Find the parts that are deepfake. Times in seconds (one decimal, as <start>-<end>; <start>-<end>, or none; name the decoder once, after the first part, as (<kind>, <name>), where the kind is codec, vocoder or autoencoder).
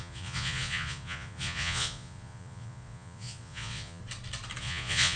0.0-4.0 (vocoder, Vocos); 4.6-5.2